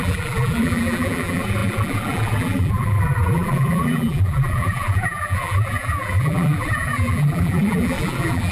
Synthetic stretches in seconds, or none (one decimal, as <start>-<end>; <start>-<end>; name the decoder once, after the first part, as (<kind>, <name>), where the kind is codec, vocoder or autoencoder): 0.0-8.5 (vocoder, BigVGAN v2)